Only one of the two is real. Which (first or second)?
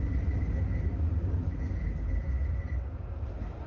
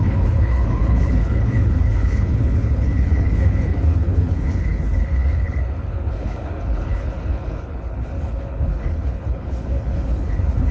first